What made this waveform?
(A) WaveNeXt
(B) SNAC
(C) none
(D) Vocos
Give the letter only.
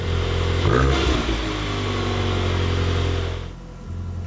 C